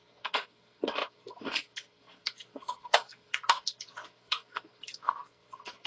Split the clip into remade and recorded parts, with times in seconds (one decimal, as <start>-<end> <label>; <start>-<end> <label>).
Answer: 0.0-5.9 remade